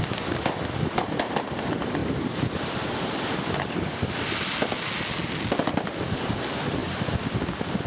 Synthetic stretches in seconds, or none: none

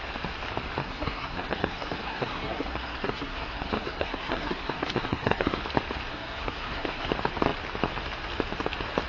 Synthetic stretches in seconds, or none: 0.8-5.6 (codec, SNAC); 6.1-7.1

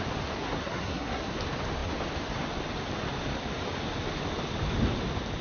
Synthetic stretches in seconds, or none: 0.4-1.3 (codec, SNAC)

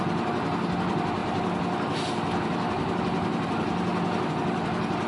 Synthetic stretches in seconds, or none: none

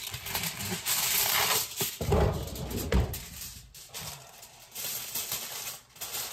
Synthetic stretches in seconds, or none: none

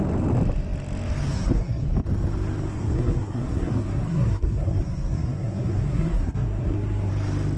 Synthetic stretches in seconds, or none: 1.3-1.8 (codec, SNAC); 2.7-7.1

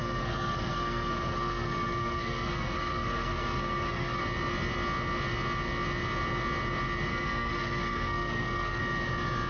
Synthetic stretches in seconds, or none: 0.0-4.2 (codec, SNAC); 7.1-8.8